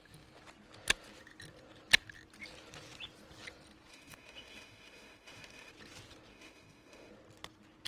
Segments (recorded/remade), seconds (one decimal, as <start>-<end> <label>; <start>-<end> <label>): 0.0-3.9 recorded; 3.9-5.7 remade; 5.7-6.3 recorded; 6.3-7.1 remade; 7.1-7.9 recorded